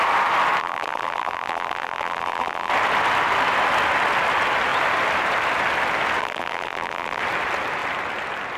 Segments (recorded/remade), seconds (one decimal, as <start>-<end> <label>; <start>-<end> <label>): 0.0-0.6 recorded; 0.6-2.7 remade; 2.7-6.2 recorded; 6.2-7.2 remade; 7.2-8.6 recorded